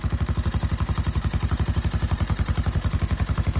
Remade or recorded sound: recorded